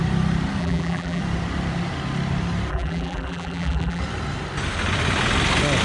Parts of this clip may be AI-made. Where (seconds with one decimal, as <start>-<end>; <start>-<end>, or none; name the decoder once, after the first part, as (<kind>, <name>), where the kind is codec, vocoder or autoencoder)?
0.6-1.2 (vocoder, BigVGAN v2); 2.7-4.0